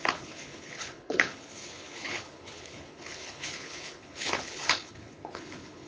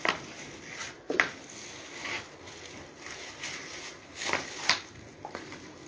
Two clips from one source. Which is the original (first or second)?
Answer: second